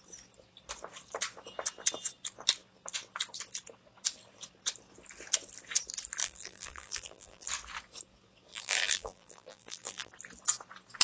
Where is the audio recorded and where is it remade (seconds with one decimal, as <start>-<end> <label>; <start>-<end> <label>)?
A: 0.0-6.2 recorded; 6.2-7.5 remade; 7.5-8.5 recorded; 8.5-10.1 remade; 10.1-11.0 recorded

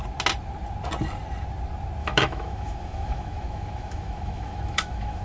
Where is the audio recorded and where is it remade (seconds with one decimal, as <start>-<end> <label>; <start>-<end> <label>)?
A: 0.0-2.0 recorded; 2.0-5.2 remade

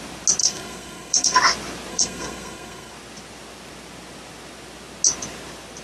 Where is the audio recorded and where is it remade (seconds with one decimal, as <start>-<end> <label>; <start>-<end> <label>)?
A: 0.0-0.4 recorded; 0.4-1.4 remade; 1.4-1.9 recorded; 1.9-2.9 remade; 2.9-5.8 recorded

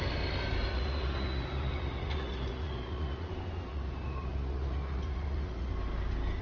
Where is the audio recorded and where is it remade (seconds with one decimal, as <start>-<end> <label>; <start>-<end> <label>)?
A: 0.0-0.7 recorded; 0.7-3.3 remade; 3.3-3.7 recorded; 3.7-5.7 remade; 5.7-6.4 recorded

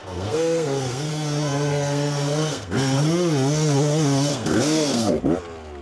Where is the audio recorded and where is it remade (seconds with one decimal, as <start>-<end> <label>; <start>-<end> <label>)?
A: 0.0-1.1 remade; 1.1-1.7 recorded; 1.7-3.1 remade; 3.1-4.3 recorded; 4.3-5.2 remade; 5.2-5.8 recorded

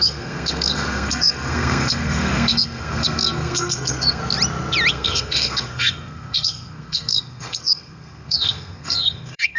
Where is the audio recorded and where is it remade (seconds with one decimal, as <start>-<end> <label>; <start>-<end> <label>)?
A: 0.0-4.2 remade; 4.2-4.9 recorded; 4.9-9.6 remade